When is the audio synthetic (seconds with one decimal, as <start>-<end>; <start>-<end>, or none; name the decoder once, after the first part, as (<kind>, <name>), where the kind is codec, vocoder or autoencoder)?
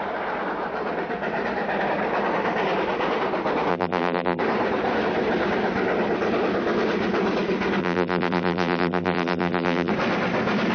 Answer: 3.7-4.4 (vocoder, BigVGAN v2); 7.8-9.9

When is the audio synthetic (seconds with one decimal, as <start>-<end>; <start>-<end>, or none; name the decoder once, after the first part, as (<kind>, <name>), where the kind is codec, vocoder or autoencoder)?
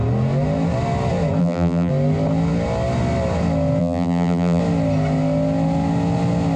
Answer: 1.4-1.9 (vocoder, BigVGAN v2); 3.8-4.6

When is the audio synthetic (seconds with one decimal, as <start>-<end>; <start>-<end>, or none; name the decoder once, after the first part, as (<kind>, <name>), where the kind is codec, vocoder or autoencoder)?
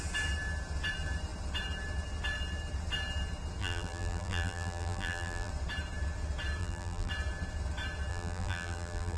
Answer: 3.6-5.5 (vocoder, BigVGAN v2); 6.6-7.1; 8.1-9.2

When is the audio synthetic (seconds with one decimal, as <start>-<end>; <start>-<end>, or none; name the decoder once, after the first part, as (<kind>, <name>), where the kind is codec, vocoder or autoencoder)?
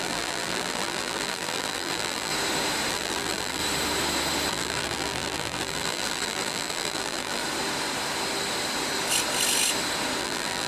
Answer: 0.0-2.3 (vocoder, BigVGAN v2); 2.9-3.6; 4.5-7.4; 10.2-10.7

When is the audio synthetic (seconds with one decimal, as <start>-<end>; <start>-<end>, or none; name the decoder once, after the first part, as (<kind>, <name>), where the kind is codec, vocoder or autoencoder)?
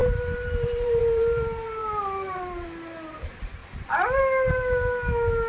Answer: 0.0-1.8 (vocoder, BigVGAN v2); 3.1-3.6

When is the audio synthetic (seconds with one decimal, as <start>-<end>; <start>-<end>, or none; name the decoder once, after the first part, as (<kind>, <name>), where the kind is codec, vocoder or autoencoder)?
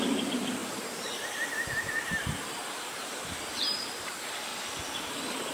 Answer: 0.0-4.5 (vocoder, BigVGAN v2); 5.1-5.5